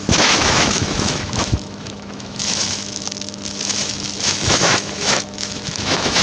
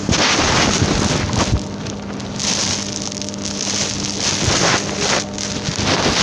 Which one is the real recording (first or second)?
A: second